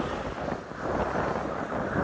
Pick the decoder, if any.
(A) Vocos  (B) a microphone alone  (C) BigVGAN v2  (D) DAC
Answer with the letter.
B